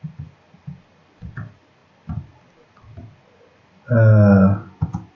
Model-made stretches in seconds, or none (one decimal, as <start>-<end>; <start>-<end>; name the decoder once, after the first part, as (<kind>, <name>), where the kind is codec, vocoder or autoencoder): none